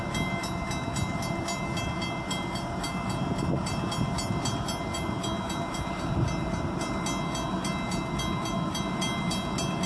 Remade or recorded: recorded